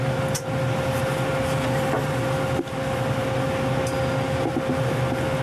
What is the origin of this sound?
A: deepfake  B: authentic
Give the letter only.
B